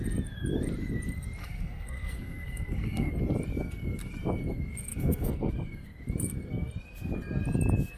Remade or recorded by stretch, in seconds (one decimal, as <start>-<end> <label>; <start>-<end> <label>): 0.0-1.4 recorded; 1.4-3.1 remade; 3.1-4.9 recorded; 4.9-5.5 remade; 5.5-8.0 recorded